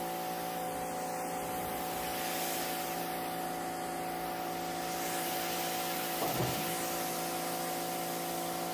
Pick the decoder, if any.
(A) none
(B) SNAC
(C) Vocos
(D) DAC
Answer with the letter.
A